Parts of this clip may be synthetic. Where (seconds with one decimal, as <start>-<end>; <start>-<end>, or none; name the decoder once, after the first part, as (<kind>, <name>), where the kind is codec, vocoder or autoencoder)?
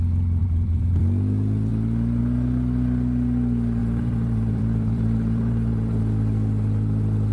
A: 0.4-1.0 (vocoder, BigVGAN v2); 3.8-6.0